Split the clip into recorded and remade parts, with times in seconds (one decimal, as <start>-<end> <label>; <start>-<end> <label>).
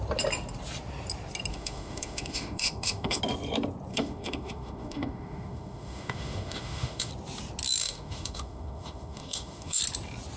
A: 0.0-1.5 recorded; 1.5-3.2 remade; 3.2-3.9 recorded; 3.9-7.1 remade; 7.1-7.8 recorded; 7.8-9.8 remade; 9.8-10.4 recorded